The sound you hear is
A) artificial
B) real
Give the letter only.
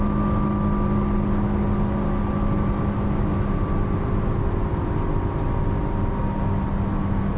B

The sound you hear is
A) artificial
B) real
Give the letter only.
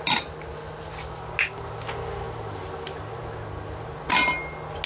B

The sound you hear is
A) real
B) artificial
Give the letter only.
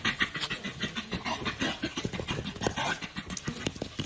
A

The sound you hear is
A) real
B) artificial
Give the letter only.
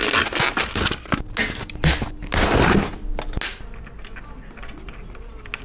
A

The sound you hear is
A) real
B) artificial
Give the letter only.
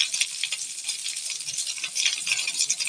A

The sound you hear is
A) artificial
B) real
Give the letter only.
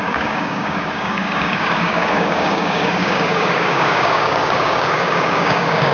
A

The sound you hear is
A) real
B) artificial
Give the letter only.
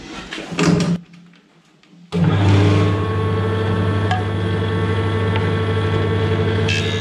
A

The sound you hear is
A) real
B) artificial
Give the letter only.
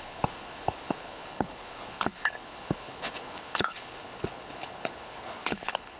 B